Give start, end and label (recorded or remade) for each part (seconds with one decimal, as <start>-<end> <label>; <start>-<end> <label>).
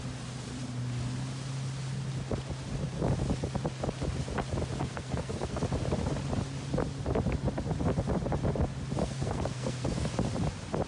0.0-4.8 recorded; 4.8-5.6 remade; 5.6-9.0 recorded; 9.0-10.1 remade; 10.1-10.9 recorded